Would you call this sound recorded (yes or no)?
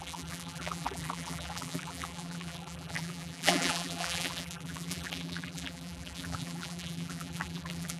no